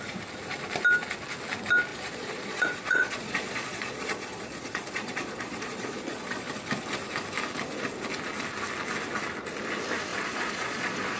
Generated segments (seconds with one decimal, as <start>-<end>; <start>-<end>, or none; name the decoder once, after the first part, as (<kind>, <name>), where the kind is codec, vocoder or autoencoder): 1.9-6.5 (vocoder, Vocos); 10.1-11.2